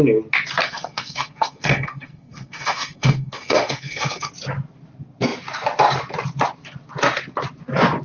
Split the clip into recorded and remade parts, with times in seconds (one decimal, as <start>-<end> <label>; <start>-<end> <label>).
0.0-0.6 recorded; 0.6-4.3 remade; 4.3-8.0 recorded